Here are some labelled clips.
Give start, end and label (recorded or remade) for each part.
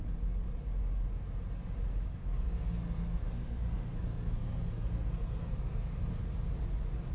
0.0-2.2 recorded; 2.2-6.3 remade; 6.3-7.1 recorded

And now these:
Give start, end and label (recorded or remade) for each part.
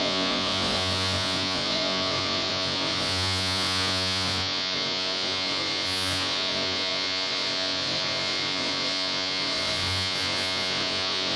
0.0-11.4 remade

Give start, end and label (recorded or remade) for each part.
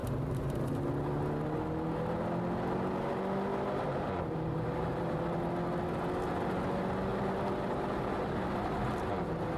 0.0-0.9 remade; 0.9-3.5 recorded; 3.5-5.2 remade; 5.2-7.1 recorded; 7.1-9.6 remade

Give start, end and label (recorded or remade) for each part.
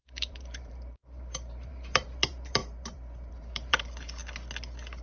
0.0-4.2 remade; 4.2-5.0 recorded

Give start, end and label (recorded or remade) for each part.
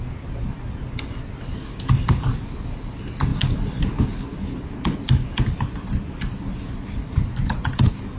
0.0-8.2 recorded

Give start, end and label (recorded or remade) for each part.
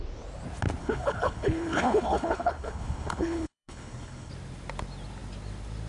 0.0-0.8 recorded; 0.8-4.3 remade; 4.3-5.9 recorded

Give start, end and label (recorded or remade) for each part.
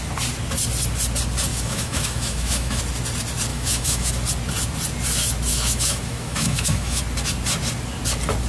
0.0-1.5 recorded; 1.5-2.8 remade; 2.8-3.5 recorded; 3.5-4.1 remade; 4.1-5.5 recorded; 5.5-7.0 remade; 7.0-8.5 recorded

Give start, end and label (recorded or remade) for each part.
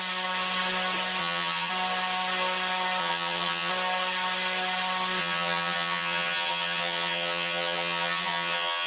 0.0-1.2 recorded; 1.2-1.7 remade; 1.7-3.0 recorded; 3.0-3.7 remade; 3.7-5.2 recorded; 5.2-8.9 remade